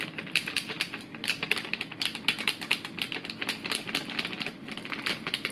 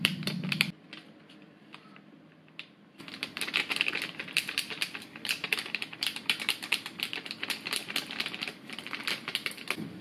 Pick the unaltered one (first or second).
first